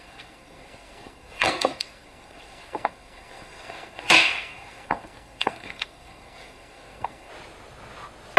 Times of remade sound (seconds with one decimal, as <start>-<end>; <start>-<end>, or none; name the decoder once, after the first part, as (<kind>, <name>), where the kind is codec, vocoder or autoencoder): 0.0-7.3 (codec, SNAC)